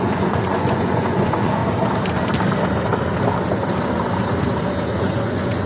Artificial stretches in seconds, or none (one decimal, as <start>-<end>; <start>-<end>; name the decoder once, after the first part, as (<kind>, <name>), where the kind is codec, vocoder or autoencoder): 0.0-1.6 (vocoder, Vocos); 5.0-5.7